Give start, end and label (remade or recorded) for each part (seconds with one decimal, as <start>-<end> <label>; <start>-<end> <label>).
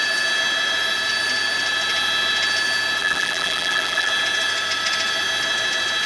0.0-3.0 recorded; 3.0-4.1 remade; 4.1-6.1 recorded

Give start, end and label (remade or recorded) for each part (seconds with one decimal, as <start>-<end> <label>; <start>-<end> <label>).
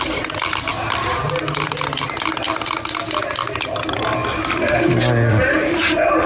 0.0-6.3 recorded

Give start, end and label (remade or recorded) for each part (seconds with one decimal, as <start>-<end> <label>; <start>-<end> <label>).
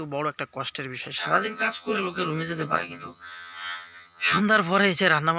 0.0-1.2 recorded; 1.2-4.4 remade; 4.4-5.4 recorded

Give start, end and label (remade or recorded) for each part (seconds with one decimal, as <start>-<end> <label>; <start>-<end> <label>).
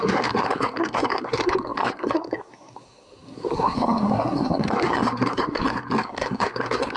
0.0-7.0 remade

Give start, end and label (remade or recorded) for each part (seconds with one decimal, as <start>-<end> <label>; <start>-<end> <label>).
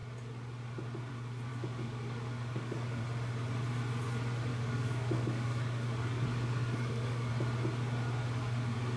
0.0-1.5 recorded; 1.5-3.0 remade; 3.0-4.5 recorded; 4.5-7.3 remade; 7.3-9.0 recorded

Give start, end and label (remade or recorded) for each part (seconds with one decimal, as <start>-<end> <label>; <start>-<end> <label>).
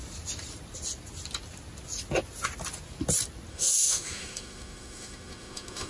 0.0-3.5 recorded; 3.5-5.9 remade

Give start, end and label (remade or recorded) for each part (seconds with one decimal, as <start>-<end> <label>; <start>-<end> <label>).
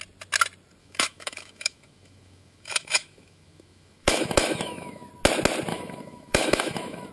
0.0-0.8 recorded; 0.8-5.1 remade; 5.1-5.7 recorded; 5.7-7.1 remade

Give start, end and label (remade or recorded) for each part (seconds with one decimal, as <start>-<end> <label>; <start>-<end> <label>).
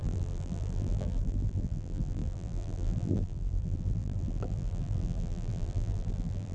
0.0-6.5 remade